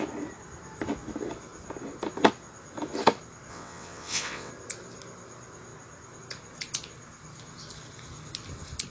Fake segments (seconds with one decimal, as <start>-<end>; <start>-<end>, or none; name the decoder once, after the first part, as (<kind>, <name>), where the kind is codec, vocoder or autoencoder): 3.5-4.5 (vocoder, WaveNeXt)